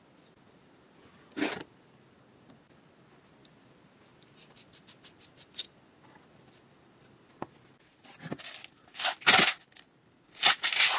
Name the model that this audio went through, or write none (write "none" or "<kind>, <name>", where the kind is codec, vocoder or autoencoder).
none